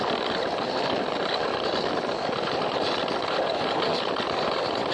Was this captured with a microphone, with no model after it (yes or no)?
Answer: yes